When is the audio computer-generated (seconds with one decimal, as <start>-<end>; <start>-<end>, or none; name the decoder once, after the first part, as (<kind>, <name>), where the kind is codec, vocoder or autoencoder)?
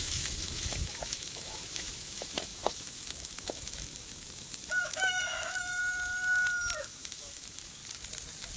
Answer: 0.0-5.8 (autoencoder, DAC-VAE); 6.8-7.8